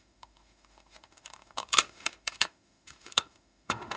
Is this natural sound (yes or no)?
no